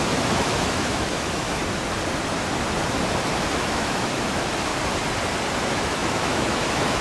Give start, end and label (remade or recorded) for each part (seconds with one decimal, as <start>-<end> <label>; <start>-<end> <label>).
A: 0.0-1.6 remade; 1.6-3.4 recorded; 3.4-4.7 remade; 4.7-5.6 recorded; 5.6-7.0 remade